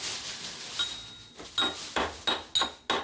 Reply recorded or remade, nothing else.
recorded